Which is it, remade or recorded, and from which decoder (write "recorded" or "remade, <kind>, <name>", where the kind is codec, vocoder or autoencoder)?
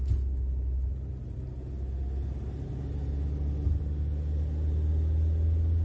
recorded